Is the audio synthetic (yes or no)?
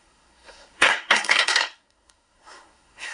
yes